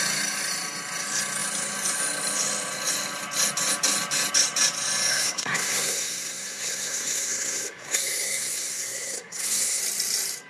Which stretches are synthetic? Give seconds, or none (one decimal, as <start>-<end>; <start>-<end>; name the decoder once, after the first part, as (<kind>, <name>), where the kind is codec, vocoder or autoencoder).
5.1-9.8 (codec, SNAC)